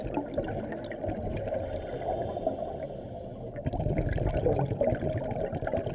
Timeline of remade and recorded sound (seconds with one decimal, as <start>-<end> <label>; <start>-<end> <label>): 0.0-5.9 recorded